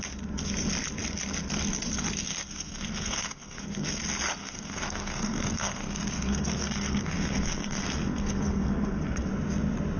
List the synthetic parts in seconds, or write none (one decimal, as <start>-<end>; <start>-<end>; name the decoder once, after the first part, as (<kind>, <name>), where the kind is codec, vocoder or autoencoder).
2.3-4.0 (codec, SNAC); 4.4-9.3